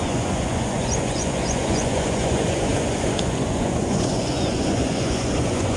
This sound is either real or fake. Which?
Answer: fake